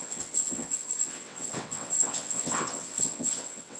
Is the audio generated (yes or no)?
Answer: yes